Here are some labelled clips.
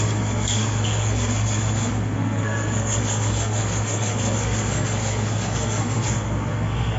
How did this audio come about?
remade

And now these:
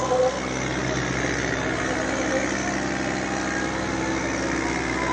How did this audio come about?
recorded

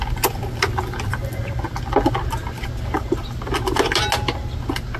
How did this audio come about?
recorded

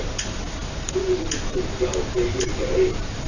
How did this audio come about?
recorded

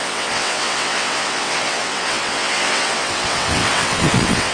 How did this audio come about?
remade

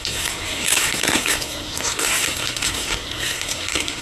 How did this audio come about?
remade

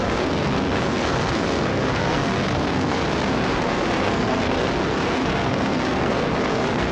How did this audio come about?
remade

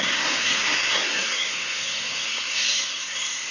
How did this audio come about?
remade